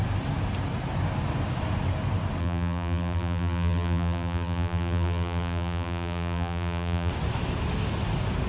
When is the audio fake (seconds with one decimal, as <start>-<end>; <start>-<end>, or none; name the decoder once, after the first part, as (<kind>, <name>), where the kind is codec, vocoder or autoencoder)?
2.4-7.1 (vocoder, BigVGAN v2)